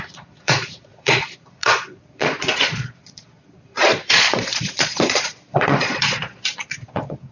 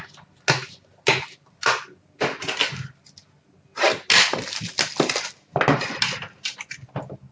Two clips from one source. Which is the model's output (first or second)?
first